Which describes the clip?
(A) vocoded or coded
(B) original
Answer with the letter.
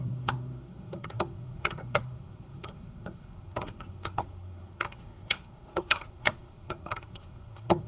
A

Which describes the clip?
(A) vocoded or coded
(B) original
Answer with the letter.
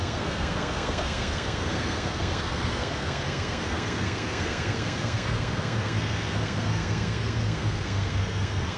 A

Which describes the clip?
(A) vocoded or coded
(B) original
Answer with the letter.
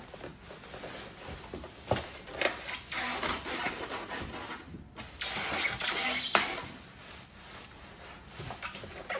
B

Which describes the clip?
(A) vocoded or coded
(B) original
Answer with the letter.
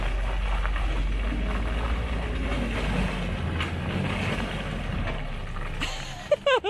B